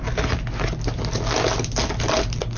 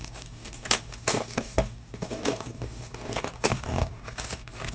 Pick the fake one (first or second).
second